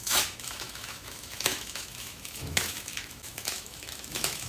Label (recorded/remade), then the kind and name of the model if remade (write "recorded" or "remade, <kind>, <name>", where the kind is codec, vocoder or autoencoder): remade, autoencoder, DAC-VAE